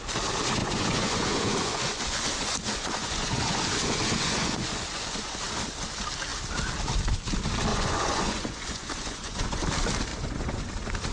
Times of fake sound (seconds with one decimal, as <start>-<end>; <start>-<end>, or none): 0.6-5.4; 7.7-9.6; 10.1-10.7